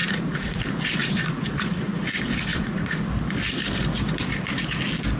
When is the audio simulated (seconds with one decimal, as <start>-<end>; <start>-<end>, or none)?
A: 0.0-0.6; 1.0-2.0; 2.5-3.1